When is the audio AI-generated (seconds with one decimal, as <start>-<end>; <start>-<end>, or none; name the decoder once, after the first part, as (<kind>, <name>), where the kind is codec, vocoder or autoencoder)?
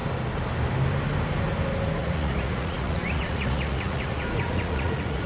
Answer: 2.0-5.3 (vocoder, Vocos)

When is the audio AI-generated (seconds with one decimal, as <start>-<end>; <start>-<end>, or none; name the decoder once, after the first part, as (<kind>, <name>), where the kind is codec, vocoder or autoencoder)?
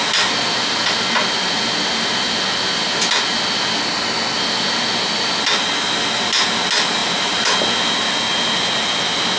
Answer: none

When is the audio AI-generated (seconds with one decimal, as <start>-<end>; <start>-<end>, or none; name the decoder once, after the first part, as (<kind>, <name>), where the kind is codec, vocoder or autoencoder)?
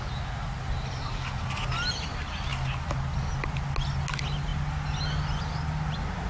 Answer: none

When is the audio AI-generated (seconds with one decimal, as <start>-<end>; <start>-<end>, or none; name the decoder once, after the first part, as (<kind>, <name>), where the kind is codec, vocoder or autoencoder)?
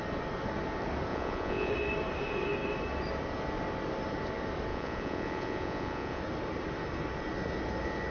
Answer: 1.1-1.7 (vocoder, Vocos); 4.7-6.2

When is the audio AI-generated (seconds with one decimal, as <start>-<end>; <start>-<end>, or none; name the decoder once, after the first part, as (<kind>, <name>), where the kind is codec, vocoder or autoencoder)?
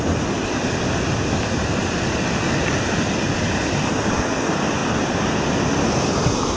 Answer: none